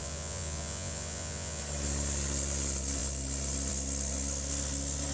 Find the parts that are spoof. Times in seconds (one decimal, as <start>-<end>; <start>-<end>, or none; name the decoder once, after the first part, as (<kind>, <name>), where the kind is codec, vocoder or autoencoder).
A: 0.0-1.6 (vocoder, Vocos)